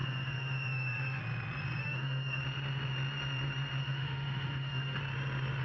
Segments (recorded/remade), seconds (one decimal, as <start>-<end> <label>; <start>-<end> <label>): 0.0-1.2 remade; 1.2-1.8 recorded; 1.8-2.4 remade; 2.4-3.8 recorded; 3.8-5.0 remade; 5.0-5.6 recorded